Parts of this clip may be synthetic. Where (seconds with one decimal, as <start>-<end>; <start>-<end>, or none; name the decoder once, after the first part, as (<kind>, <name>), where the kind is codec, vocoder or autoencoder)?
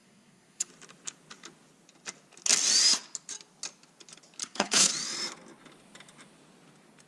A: 0.0-0.7 (codec, SNAC); 4.4-4.9